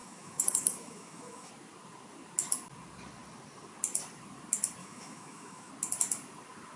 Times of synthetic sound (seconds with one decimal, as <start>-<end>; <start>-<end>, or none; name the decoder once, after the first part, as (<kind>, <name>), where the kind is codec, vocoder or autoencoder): 0.0-1.5 (autoencoder, DAC-VAE); 4.8-5.7

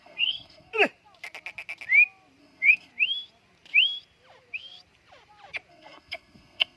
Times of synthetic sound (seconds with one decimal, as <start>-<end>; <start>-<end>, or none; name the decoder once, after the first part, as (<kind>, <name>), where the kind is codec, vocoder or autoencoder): 0.0-0.7 (codec, SNAC); 2.4-2.9; 5.7-6.8

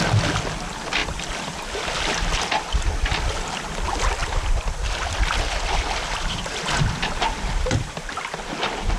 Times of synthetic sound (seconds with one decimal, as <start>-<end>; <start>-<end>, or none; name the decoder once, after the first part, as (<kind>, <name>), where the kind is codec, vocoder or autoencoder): 1.0-2.7 (vocoder, BigVGAN v2); 4.2-7.9

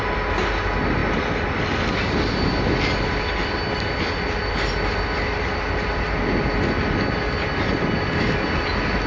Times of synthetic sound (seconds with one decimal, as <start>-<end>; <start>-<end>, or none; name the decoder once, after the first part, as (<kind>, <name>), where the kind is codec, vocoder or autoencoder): none

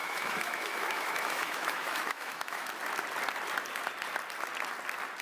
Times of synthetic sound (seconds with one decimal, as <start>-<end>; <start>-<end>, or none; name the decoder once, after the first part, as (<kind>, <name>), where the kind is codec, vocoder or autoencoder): 0.0-2.7 (autoencoder, DAC-VAE)

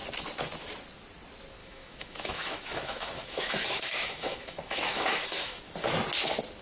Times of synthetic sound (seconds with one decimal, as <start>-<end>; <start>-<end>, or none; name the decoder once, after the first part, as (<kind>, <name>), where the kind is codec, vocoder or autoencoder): 1.6-5.6 (autoencoder, DAC-VAE)